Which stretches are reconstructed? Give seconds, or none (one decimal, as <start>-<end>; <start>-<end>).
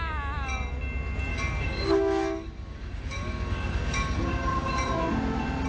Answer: 1.3-4.7